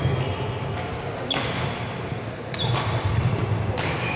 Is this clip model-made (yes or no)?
no